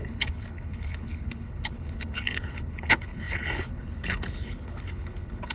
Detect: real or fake fake